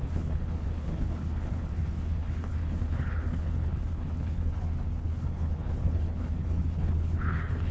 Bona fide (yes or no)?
no